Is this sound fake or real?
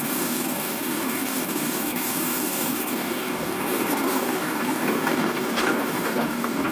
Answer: fake